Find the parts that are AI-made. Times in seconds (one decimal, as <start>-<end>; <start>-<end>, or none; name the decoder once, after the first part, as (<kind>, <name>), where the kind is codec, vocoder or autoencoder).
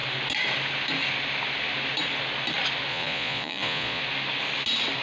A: 2.9-4.0 (vocoder, Vocos)